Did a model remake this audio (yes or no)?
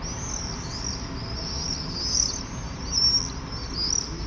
no